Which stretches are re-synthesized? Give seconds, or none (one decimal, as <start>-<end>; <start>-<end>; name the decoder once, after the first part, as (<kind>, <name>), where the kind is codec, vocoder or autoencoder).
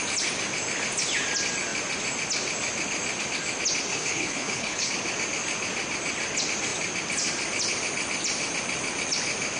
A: 3.9-4.9 (codec, HILCodec)